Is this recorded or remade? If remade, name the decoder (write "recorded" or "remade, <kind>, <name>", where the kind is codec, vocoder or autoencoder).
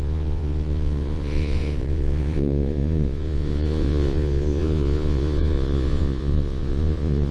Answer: remade, vocoder, Vocos